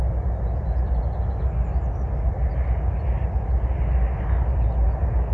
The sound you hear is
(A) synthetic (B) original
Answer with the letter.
B